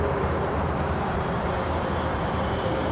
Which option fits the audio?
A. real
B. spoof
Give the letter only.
B